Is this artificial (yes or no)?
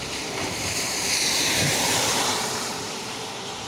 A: yes